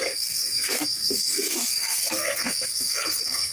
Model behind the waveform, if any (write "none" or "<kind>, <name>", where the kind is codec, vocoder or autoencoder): codec, SNAC